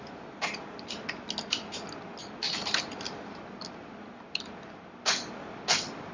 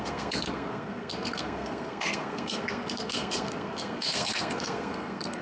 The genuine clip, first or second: first